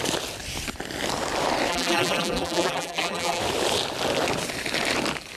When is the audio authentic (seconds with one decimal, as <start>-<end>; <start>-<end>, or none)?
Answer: 0.0-1.7; 3.4-5.4